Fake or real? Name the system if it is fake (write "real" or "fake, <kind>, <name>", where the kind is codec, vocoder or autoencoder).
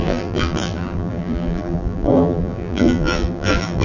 fake, vocoder, BigVGAN v2